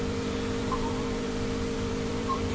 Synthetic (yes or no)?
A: yes